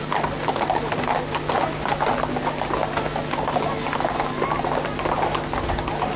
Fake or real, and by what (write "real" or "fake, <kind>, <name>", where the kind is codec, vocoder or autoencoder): real